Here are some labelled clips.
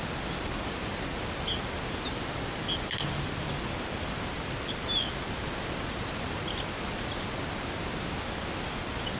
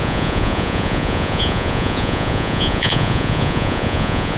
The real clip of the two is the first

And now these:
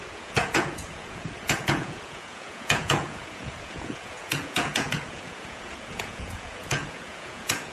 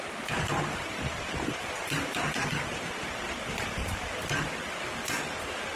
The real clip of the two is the second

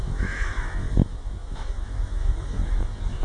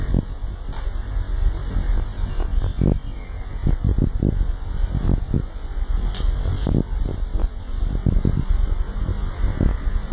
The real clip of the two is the second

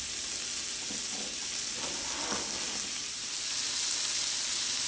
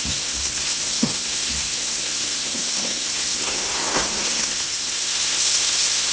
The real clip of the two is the first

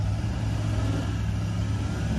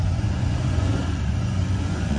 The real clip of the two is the first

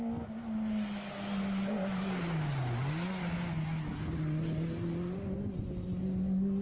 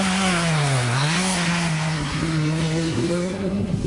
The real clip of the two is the first